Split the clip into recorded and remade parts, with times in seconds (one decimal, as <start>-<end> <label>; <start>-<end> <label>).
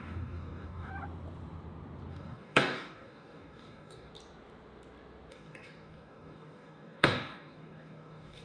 0.0-0.9 remade; 0.9-2.1 recorded; 2.1-4.1 remade; 4.1-5.3 recorded; 5.3-8.4 remade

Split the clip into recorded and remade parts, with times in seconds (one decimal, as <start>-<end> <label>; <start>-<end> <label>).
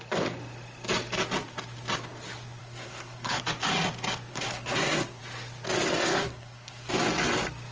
0.0-2.6 recorded; 2.6-3.4 remade; 3.4-4.3 recorded; 4.3-5.2 remade; 5.2-6.1 recorded; 6.1-6.9 remade; 6.9-7.7 recorded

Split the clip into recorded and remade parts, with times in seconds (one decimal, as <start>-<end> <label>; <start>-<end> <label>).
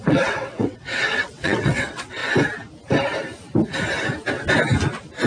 0.0-2.2 remade; 2.2-5.3 recorded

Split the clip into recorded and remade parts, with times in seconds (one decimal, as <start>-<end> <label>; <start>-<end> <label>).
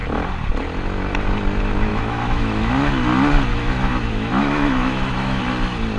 0.0-1.9 recorded; 1.9-2.7 remade; 2.7-3.5 recorded; 3.5-5.4 remade; 5.4-6.0 recorded